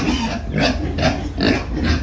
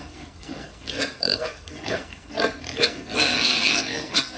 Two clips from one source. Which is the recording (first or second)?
first